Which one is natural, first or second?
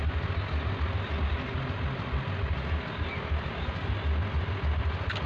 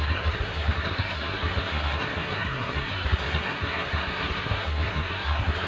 first